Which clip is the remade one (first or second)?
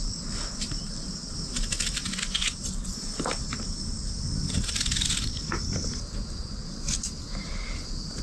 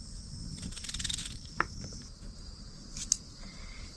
second